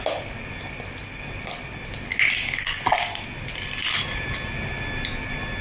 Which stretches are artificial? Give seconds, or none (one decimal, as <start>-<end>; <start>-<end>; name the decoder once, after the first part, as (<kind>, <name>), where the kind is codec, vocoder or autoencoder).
none